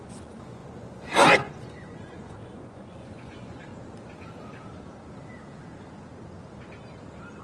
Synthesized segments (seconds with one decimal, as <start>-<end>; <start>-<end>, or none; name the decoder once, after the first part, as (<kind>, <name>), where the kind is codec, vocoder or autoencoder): 0.0-3.7 (vocoder, Vocos)